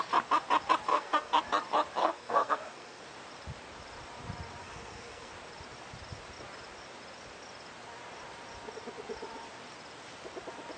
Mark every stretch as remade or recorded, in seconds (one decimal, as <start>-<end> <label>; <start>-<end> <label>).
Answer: 0.0-0.9 recorded; 0.9-1.4 remade; 1.4-2.0 recorded; 2.0-3.0 remade; 3.0-4.6 recorded; 4.6-5.3 remade; 5.3-10.8 recorded